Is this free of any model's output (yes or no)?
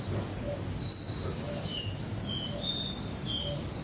yes